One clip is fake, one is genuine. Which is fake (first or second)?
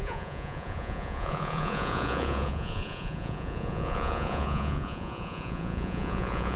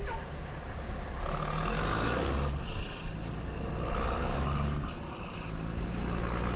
first